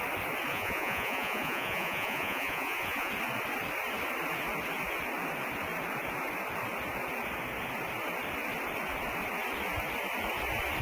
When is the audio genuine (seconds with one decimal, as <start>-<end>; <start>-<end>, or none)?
0.0-0.5; 3.1-10.8